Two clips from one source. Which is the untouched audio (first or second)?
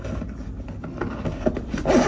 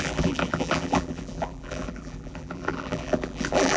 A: first